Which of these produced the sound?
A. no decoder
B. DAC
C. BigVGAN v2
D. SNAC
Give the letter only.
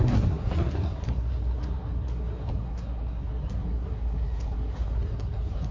D